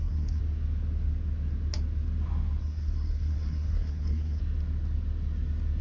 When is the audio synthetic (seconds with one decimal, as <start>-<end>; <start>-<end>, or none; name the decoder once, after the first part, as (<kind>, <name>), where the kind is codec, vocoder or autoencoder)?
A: 0.0-0.4 (codec, SNAC); 2.6-4.4